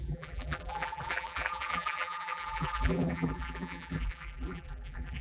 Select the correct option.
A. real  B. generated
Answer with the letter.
B